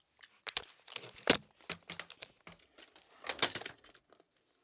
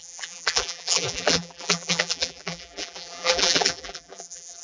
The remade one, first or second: second